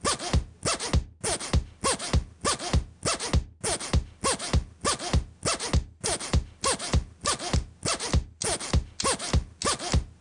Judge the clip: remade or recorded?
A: recorded